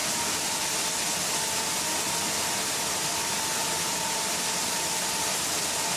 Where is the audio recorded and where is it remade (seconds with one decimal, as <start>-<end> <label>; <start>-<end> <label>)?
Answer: 0.0-6.0 recorded